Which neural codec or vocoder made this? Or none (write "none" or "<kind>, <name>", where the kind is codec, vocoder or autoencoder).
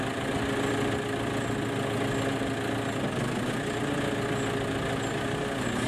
none